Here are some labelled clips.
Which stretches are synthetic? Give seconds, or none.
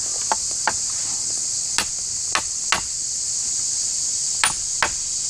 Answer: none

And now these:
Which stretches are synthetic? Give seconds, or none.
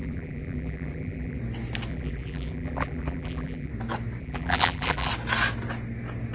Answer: 0.0-1.4 (vocoder, BigVGAN v2); 1.9-3.7; 4.2-5.1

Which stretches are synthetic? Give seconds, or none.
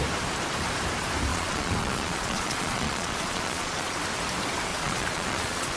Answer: 1.3-4.0 (vocoder, Vocos); 4.7-5.8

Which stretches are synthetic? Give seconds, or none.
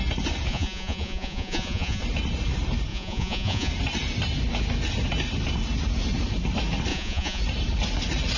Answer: 0.5-2.0 (vocoder, Vocos); 2.9-3.7; 6.9-7.4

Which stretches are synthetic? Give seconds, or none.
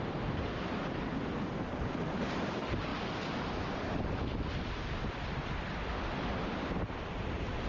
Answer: 0.0-2.9 (vocoder, BigVGAN v2); 6.8-7.7